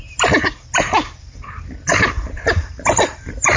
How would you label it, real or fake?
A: real